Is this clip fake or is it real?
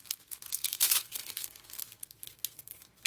fake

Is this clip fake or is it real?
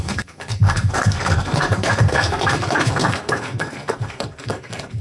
fake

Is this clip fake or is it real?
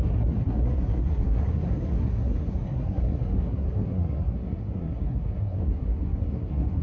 fake